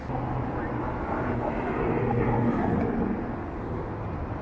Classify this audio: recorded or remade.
recorded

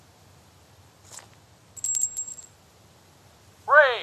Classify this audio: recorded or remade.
recorded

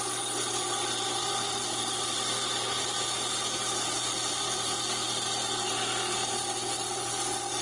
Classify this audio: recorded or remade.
recorded